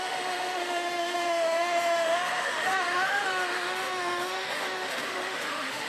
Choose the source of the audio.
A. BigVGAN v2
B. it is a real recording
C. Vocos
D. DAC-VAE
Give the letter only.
D